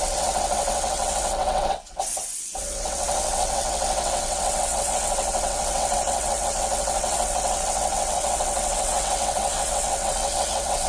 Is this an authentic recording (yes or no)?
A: no